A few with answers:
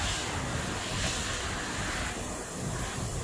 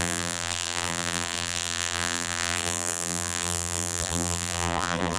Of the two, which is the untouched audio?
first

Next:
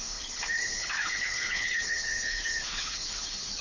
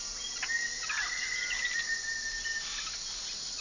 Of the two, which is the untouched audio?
second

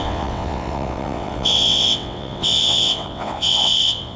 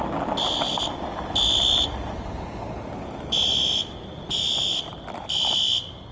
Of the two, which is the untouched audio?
second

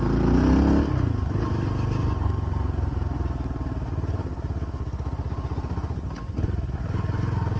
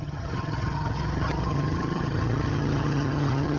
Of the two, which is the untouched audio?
first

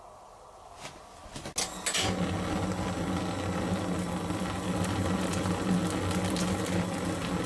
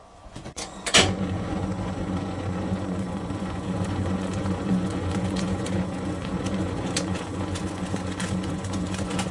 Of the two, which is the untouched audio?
first